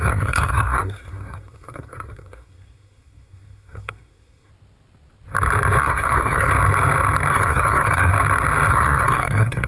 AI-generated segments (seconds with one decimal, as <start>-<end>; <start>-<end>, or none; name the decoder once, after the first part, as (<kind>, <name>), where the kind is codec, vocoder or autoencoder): 0.0-4.5 (codec, SNAC); 5.8-6.5; 7.3-8.1; 8.7-9.7